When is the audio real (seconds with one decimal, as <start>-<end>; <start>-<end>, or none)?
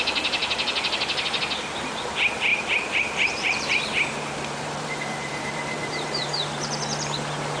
0.0-2.5; 6.3-7.6